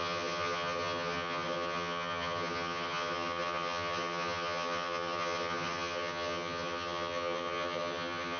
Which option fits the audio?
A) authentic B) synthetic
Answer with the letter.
B